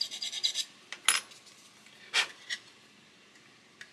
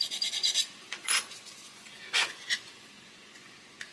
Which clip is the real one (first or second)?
first